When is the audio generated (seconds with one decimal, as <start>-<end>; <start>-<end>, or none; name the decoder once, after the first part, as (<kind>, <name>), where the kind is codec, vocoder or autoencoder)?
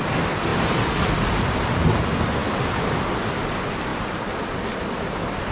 none